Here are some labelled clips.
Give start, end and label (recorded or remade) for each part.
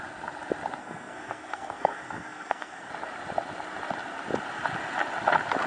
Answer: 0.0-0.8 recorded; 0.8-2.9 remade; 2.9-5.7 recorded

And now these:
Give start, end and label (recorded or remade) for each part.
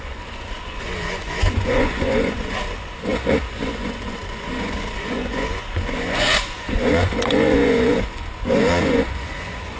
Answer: 0.0-9.8 remade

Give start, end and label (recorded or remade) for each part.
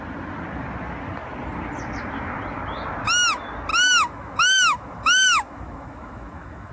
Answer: 0.0-3.7 recorded; 3.7-6.7 remade